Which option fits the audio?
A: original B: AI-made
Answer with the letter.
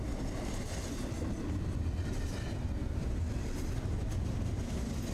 A